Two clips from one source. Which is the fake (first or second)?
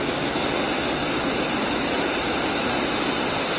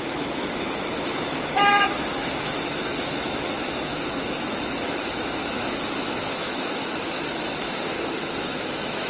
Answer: second